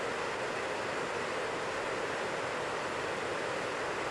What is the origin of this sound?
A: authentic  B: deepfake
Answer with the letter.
A